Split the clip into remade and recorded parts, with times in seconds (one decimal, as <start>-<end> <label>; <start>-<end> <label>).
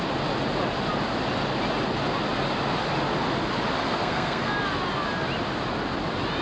0.0-3.9 recorded; 3.9-4.5 remade; 4.5-6.4 recorded